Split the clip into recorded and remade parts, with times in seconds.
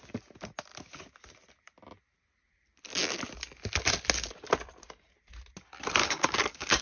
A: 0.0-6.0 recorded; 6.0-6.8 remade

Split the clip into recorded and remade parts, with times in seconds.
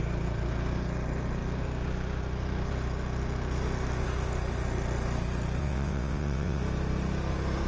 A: 0.0-5.6 recorded; 5.6-6.6 remade; 6.6-7.7 recorded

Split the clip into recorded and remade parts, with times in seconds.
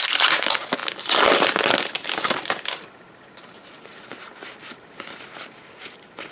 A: 0.0-6.3 recorded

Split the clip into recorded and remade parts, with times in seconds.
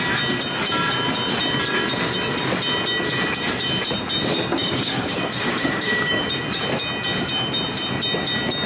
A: 0.0-4.6 recorded; 4.6-6.2 remade; 6.2-8.7 recorded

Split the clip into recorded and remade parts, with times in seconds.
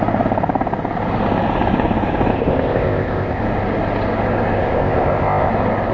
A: 0.0-2.3 recorded; 2.3-3.4 remade; 3.4-4.6 recorded; 4.6-5.5 remade; 5.5-5.9 recorded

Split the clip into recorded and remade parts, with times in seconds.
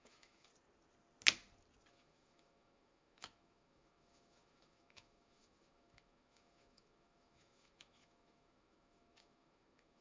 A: 0.0-0.5 remade; 0.5-1.9 recorded; 1.9-10.0 remade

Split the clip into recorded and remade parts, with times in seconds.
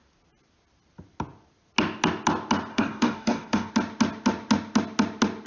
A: 0.0-2.7 recorded; 2.7-3.7 remade; 3.7-5.5 recorded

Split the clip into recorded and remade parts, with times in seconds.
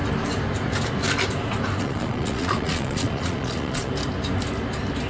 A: 0.0-1.8 recorded; 1.8-3.9 remade; 3.9-5.1 recorded